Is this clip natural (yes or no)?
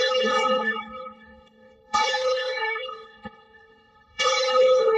no